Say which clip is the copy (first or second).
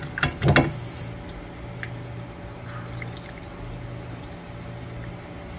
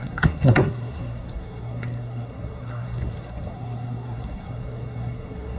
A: second